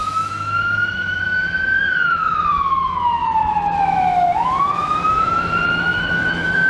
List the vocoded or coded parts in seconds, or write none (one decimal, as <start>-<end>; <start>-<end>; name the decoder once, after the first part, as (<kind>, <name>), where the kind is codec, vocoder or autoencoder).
0.0-6.7 (autoencoder, DAC-VAE)